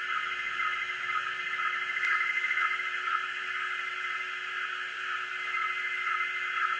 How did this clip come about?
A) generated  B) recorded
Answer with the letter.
B